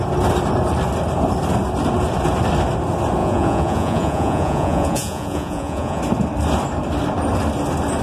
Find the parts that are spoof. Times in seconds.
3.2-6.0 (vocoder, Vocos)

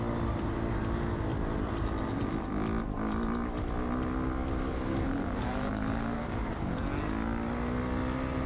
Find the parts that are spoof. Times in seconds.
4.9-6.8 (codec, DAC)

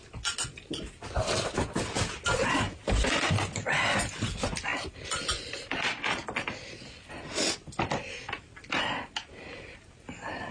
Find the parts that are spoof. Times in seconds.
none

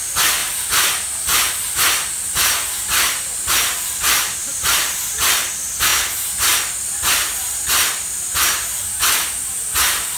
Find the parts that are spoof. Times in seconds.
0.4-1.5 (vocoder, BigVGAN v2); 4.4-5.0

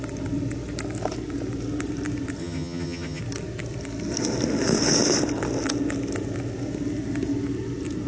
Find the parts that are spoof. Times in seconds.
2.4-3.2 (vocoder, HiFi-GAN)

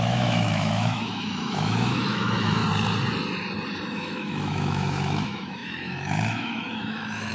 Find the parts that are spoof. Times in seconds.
0.0-2.6 (autoencoder, DAC-VAE); 3.9-7.3

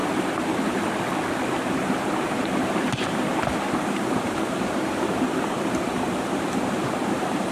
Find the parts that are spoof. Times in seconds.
1.7-7.5 (vocoder, BigVGAN v2)

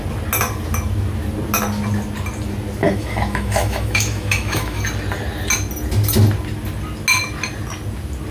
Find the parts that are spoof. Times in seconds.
2.8-4.8 (autoencoder, DAC-VAE)